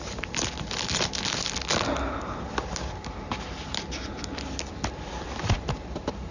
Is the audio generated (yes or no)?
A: no